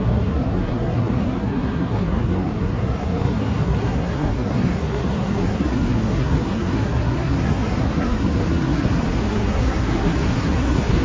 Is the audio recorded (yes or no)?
no